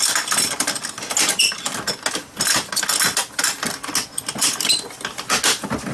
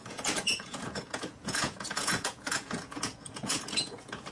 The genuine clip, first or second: first